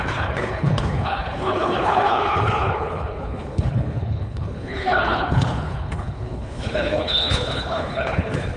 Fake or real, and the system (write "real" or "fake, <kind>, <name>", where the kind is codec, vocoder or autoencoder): fake, codec, HILCodec